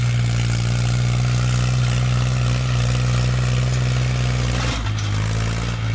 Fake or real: real